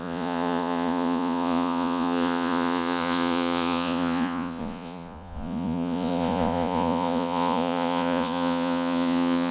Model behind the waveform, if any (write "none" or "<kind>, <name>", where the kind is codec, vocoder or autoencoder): vocoder, Vocos